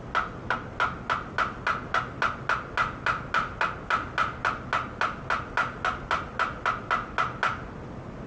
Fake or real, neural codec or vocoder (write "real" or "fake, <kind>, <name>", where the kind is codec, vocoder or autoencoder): real